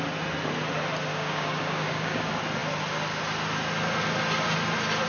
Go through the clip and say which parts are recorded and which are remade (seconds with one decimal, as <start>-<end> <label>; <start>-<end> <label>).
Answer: 0.0-1.1 recorded; 1.1-2.2 remade; 2.2-5.1 recorded